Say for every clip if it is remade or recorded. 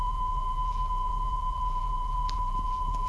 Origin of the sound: remade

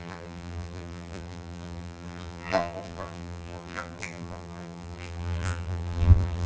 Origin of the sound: remade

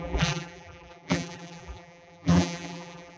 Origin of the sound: remade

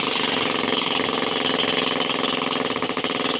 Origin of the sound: recorded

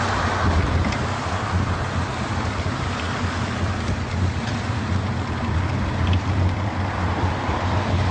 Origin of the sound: remade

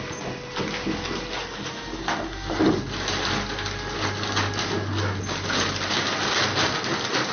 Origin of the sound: recorded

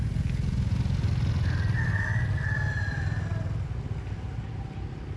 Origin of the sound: recorded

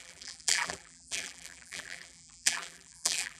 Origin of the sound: remade